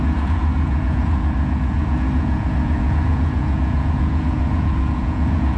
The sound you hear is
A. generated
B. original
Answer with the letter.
A